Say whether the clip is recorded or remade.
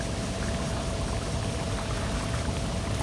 recorded